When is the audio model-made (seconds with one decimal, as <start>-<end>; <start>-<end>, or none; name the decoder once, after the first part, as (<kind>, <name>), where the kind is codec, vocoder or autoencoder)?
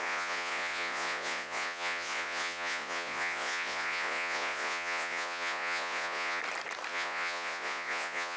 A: 0.0-6.4 (vocoder, Vocos); 6.9-8.4